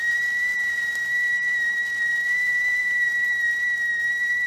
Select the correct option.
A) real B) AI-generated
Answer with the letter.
A